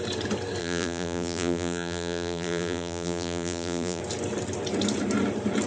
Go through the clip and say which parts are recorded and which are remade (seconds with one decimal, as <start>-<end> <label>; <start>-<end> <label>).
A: 0.0-0.6 recorded; 0.6-4.0 remade; 4.0-5.7 recorded